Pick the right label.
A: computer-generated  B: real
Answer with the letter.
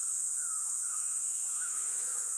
A